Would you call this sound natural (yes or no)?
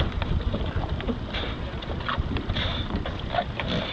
yes